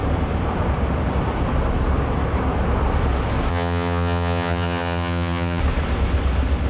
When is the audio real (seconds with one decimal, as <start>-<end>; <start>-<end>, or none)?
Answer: 0.0-3.5; 5.6-6.7